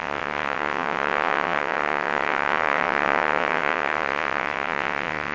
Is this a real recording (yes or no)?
no